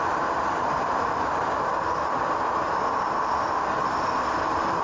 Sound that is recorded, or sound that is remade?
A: recorded